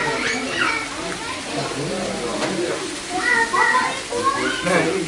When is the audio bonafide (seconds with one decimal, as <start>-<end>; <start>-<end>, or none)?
0.0-5.1